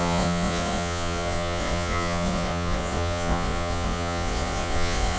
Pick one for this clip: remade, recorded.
remade